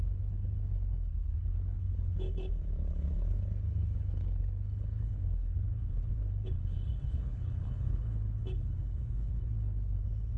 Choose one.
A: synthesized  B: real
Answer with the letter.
A